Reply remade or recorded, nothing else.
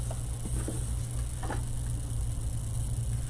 recorded